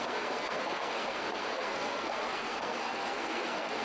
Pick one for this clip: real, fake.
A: fake